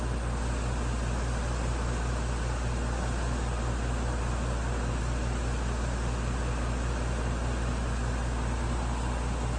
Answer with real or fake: real